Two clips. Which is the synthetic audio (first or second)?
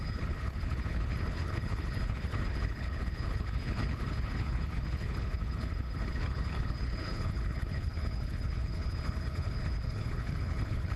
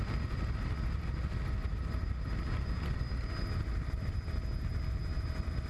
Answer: first